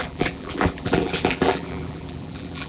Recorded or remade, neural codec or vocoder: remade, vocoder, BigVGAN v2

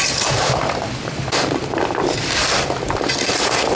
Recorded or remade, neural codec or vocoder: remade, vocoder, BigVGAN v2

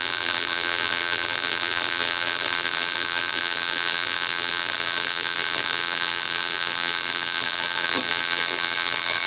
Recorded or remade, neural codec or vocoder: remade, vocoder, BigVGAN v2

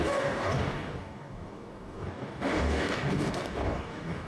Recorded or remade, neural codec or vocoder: remade, codec, DAC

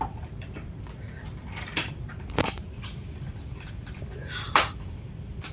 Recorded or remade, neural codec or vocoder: remade, vocoder, BigVGAN v2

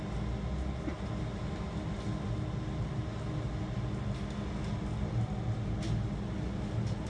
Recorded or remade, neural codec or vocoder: recorded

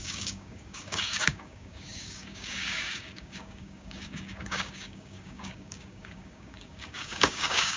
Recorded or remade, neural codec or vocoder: remade, codec, DAC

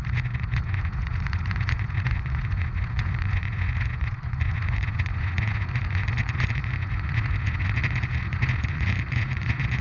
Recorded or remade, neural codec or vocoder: remade, vocoder, Vocos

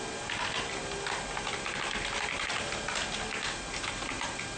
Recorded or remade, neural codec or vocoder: recorded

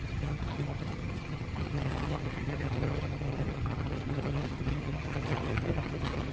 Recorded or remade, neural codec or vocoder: remade, vocoder, HiFi-GAN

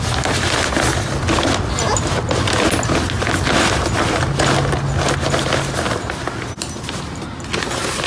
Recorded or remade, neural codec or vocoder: recorded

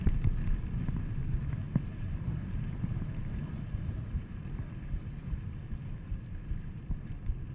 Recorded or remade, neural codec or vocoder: recorded